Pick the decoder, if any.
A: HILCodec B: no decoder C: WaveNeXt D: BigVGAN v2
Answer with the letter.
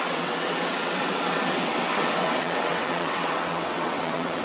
C